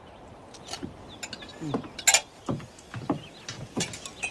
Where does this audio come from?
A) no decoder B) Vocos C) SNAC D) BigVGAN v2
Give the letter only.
A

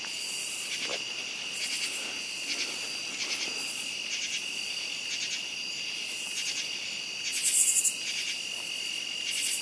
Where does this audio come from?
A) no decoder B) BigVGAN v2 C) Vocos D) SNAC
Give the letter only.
A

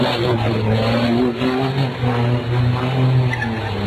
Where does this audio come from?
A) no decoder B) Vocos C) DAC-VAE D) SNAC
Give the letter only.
A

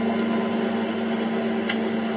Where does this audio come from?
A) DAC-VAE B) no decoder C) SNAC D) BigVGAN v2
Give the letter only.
B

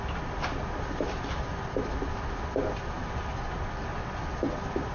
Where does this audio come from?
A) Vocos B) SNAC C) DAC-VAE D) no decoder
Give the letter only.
D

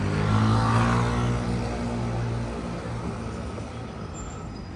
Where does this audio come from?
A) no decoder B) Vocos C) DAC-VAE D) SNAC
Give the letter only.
A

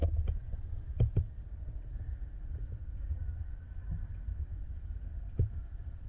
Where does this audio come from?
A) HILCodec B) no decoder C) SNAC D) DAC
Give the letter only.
B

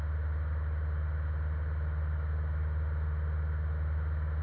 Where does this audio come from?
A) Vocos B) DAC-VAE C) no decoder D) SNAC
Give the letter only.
C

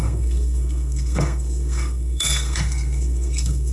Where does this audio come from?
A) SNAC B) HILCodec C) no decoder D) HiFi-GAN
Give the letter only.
A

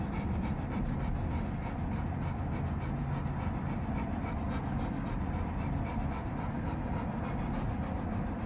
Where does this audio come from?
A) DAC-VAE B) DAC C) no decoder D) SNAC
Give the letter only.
C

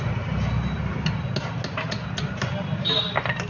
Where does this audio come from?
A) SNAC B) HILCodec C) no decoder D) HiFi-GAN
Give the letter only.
C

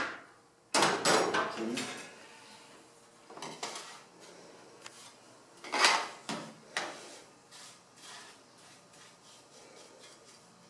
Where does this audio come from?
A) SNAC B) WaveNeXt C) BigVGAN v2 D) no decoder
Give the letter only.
D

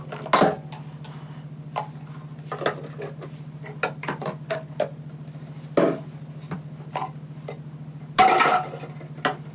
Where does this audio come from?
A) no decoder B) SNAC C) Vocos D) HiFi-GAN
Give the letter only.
A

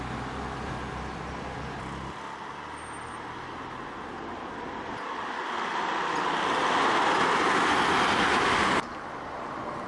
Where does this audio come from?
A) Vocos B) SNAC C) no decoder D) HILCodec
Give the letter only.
C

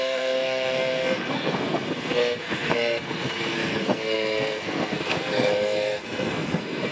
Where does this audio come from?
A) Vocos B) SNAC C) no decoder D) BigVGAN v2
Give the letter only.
B